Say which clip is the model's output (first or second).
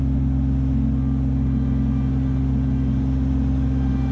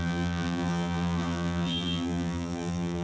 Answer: second